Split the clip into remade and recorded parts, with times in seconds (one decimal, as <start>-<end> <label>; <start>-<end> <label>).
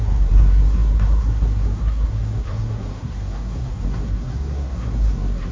0.0-5.5 remade